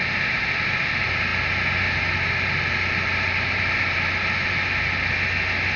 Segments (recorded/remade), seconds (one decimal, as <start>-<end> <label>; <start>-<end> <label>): 0.0-5.8 recorded